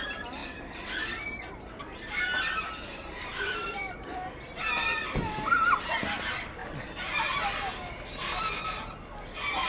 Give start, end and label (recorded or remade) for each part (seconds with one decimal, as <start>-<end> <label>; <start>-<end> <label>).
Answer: 0.0-0.4 recorded; 0.4-4.6 remade; 4.6-6.6 recorded; 6.6-7.2 remade; 7.2-9.7 recorded